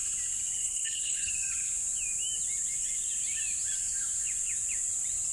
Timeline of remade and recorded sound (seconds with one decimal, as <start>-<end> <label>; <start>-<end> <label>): 0.0-0.6 recorded; 0.6-1.3 remade; 1.3-5.3 recorded